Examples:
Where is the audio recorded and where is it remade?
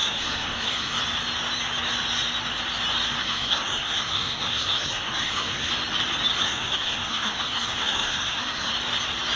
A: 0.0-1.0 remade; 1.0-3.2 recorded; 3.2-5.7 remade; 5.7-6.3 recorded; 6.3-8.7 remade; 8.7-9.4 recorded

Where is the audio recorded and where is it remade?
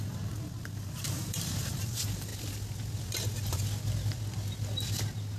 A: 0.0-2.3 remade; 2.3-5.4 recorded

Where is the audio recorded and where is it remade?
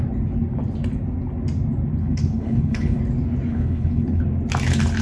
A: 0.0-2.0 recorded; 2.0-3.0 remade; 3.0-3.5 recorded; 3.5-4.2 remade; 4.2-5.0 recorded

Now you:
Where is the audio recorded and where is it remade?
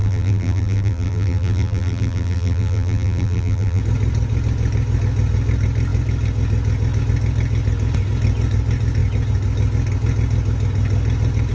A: 0.0-3.8 remade; 3.8-11.5 recorded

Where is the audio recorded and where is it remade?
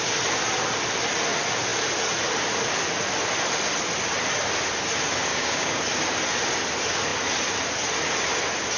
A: 0.0-5.3 recorded; 5.3-5.8 remade; 5.8-8.8 recorded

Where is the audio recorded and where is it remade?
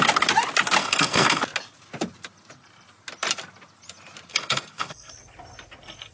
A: 0.0-0.8 recorded; 0.8-1.4 remade; 1.4-4.3 recorded; 4.3-5.1 remade; 5.1-6.1 recorded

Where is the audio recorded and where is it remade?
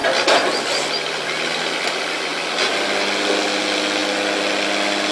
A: 0.0-5.1 recorded